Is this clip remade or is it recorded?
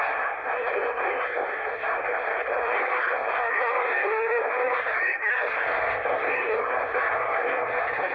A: remade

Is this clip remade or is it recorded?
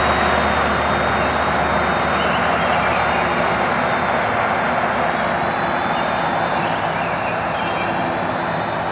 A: recorded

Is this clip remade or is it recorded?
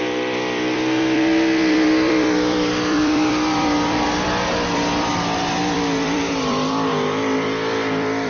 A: remade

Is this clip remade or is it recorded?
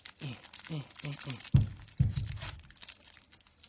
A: recorded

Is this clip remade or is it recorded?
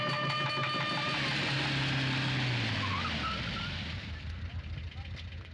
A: recorded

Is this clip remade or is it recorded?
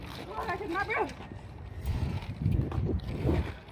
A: remade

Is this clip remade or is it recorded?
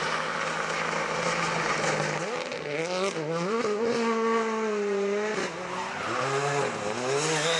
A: recorded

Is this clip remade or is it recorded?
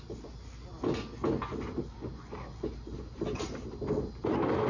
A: recorded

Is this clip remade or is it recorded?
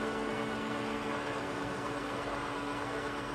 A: remade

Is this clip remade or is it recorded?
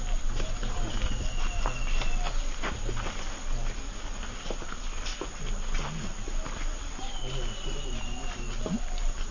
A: recorded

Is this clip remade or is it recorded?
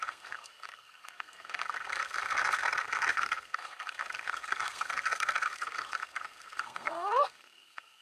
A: remade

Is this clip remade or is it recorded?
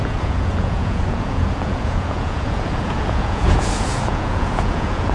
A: remade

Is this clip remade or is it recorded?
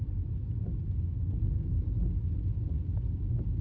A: recorded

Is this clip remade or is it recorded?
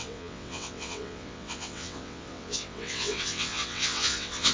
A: remade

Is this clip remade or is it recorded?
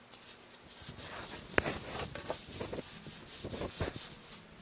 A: recorded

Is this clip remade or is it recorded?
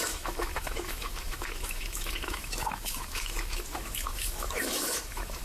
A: remade